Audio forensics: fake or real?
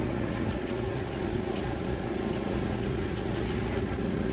fake